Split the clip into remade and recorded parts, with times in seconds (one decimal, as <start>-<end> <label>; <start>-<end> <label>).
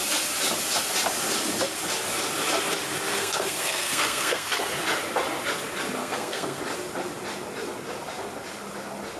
0.0-3.1 recorded; 3.1-4.6 remade; 4.6-6.0 recorded; 6.0-6.6 remade; 6.6-9.2 recorded